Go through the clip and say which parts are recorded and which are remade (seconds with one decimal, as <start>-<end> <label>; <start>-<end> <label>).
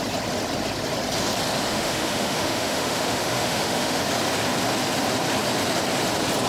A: 0.0-1.7 recorded; 1.7-4.0 remade; 4.0-6.5 recorded